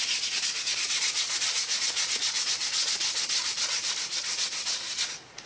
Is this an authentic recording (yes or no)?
no